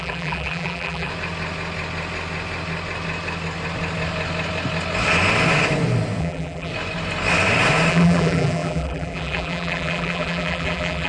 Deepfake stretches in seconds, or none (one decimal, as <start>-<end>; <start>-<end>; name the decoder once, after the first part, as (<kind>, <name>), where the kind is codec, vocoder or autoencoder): 0.0-1.1 (vocoder, BigVGAN v2); 6.2-6.7; 7.9-11.1